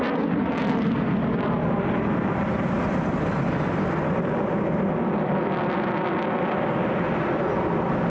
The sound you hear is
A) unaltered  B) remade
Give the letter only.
A